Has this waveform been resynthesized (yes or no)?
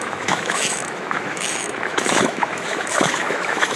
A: yes